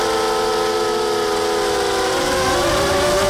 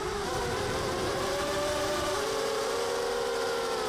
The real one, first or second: first